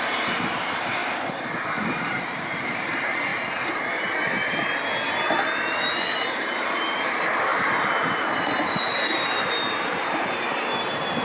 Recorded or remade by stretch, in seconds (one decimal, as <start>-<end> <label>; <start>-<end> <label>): 0.0-1.0 remade; 1.0-1.6 recorded; 1.6-3.3 remade; 3.3-3.9 recorded; 3.9-4.6 remade; 4.6-5.7 recorded; 5.7-11.2 remade